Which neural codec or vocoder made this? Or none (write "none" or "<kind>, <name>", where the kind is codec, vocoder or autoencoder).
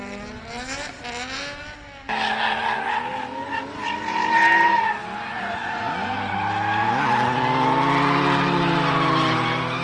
none